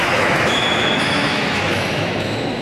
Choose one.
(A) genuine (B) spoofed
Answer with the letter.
B